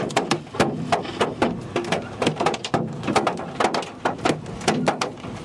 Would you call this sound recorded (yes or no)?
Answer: yes